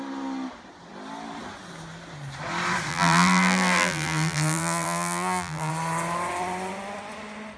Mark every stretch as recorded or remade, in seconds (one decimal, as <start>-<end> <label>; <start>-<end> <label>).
0.0-2.9 recorded; 2.9-5.7 remade; 5.7-7.6 recorded